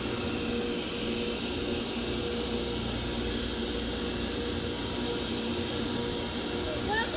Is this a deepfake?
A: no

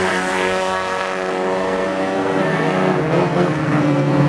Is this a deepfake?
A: yes